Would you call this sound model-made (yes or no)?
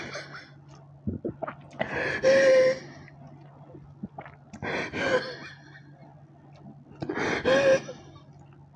no